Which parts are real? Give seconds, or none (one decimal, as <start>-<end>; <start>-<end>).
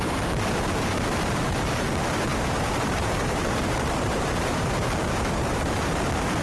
none